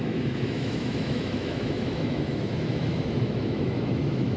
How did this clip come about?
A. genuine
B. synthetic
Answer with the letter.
B